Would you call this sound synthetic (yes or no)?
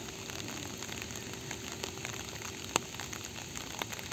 no